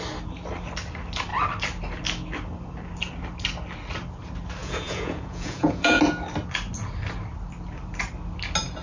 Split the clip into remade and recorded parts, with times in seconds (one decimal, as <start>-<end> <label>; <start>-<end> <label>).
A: 0.0-4.6 recorded; 4.6-6.0 remade; 6.0-8.8 recorded